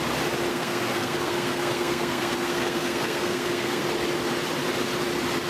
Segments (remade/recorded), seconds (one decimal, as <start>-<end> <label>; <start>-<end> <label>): 0.0-0.5 recorded; 0.5-3.8 remade; 3.8-5.5 recorded